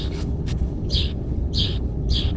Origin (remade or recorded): remade